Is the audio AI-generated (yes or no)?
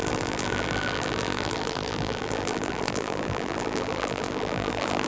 yes